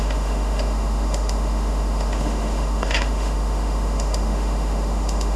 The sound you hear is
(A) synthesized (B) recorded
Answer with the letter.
A